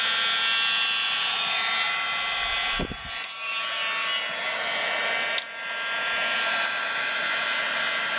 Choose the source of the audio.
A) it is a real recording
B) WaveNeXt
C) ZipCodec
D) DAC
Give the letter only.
A